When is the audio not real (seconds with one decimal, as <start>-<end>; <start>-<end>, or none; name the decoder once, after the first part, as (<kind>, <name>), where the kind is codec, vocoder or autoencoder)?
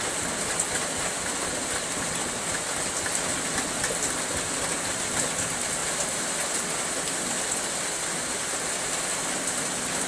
none